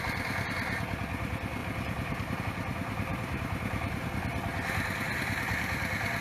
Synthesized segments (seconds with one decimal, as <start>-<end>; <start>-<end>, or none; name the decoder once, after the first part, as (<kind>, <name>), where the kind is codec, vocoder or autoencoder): 1.6-2.4 (vocoder, BigVGAN v2); 3.1-4.0